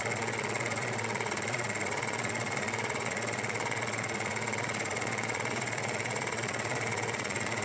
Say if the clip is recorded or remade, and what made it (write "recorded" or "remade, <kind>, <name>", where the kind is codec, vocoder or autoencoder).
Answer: remade, vocoder, Vocos